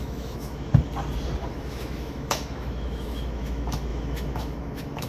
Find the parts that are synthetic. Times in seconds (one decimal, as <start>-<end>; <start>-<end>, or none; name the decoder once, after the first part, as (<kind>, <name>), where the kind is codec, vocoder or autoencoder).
0.0-0.7 (autoencoder, DAC-VAE); 1.5-5.1